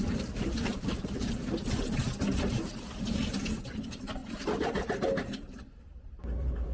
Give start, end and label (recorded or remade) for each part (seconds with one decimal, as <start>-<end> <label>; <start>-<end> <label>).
0.0-1.4 remade; 1.4-3.7 recorded; 3.7-4.2 remade; 4.2-5.2 recorded; 5.2-6.7 remade